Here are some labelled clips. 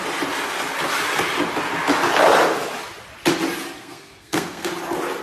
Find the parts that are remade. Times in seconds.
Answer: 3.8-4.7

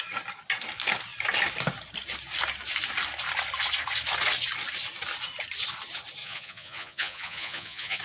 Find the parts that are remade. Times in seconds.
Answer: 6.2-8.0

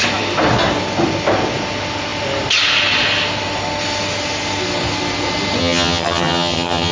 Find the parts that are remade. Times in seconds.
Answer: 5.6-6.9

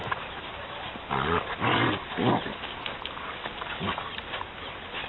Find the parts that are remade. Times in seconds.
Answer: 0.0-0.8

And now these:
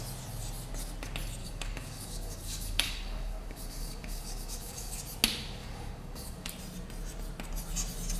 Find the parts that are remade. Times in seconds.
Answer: 1.4-5.0; 5.6-6.5